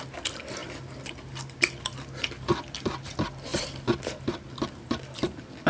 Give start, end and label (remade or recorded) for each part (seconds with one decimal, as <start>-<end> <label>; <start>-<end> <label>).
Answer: 0.0-3.5 remade; 3.5-4.6 recorded; 4.6-5.7 remade